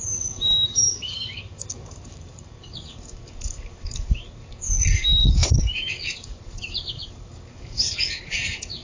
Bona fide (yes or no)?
no